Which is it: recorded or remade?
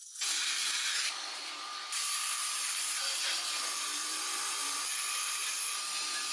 recorded